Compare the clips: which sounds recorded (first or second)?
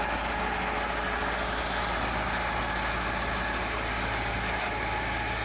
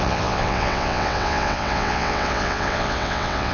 first